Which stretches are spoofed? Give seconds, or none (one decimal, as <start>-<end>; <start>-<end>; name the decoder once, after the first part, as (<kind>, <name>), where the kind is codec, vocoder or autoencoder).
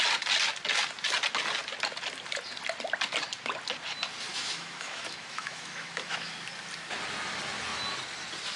4.3-6.3 (autoencoder, DAC-VAE)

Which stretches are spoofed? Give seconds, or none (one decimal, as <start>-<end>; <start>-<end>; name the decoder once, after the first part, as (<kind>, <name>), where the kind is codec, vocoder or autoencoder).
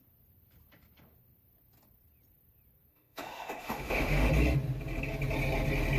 2.9-4.3 (autoencoder, DAC-VAE)